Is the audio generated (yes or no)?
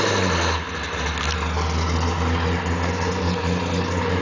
no